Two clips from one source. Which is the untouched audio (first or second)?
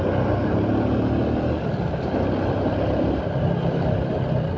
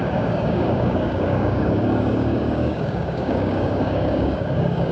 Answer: first